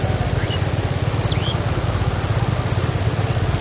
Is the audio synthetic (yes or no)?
no